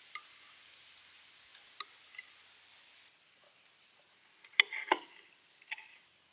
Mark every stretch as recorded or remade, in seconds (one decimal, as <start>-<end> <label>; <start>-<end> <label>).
0.0-6.3 recorded

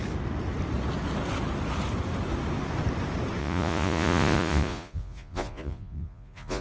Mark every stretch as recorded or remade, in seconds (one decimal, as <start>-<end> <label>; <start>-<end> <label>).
0.0-3.4 recorded; 3.4-6.6 remade

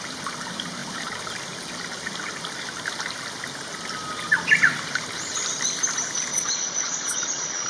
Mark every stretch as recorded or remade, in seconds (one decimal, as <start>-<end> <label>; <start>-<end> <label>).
0.0-6.3 recorded; 6.3-7.7 remade

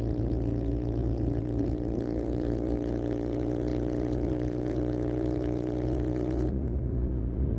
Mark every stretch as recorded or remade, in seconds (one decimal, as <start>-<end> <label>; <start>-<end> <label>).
0.0-7.6 remade